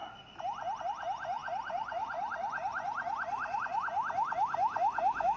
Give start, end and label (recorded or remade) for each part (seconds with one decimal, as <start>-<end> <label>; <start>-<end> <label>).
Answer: 0.0-0.8 remade; 0.8-1.4 recorded; 1.4-3.6 remade; 3.6-5.4 recorded